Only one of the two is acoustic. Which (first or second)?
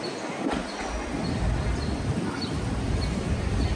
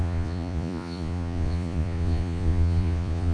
first